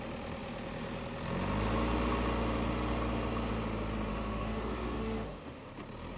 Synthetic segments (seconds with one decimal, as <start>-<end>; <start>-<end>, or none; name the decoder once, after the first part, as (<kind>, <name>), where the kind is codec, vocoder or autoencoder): 4.1-5.7 (autoencoder, DAC-VAE)